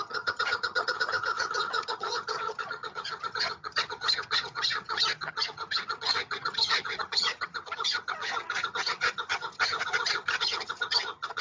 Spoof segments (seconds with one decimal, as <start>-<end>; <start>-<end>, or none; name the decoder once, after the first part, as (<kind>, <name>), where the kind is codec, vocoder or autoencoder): 0.0-11.4 (vocoder, HiFi-GAN)